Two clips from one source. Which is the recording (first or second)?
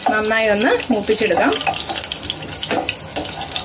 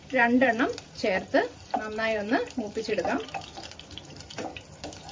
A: first